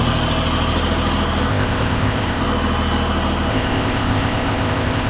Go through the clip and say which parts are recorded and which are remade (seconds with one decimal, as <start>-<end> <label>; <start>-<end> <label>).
0.0-1.5 recorded; 1.5-2.4 remade; 2.4-3.5 recorded; 3.5-5.1 remade